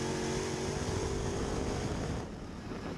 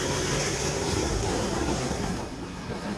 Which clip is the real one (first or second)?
first